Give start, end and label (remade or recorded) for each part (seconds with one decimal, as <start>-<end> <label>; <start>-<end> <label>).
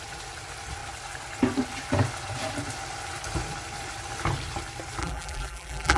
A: 0.0-5.0 recorded; 5.0-6.0 remade